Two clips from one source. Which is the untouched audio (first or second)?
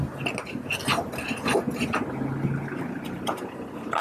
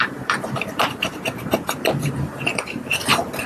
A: first